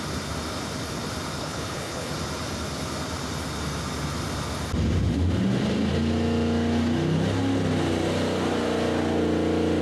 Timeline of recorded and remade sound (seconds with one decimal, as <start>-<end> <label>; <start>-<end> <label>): 0.0-1.4 recorded; 1.4-2.1 remade; 2.1-9.8 recorded